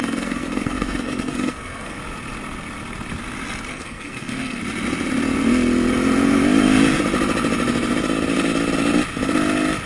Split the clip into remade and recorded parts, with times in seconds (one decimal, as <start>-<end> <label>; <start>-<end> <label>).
0.0-2.0 remade; 2.0-3.7 recorded; 3.7-4.6 remade; 4.6-9.9 recorded